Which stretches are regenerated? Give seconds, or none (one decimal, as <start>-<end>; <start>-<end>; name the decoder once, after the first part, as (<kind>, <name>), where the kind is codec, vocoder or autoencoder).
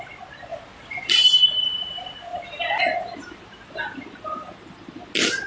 0.5-1.1 (vocoder, BigVGAN v2); 2.3-5.1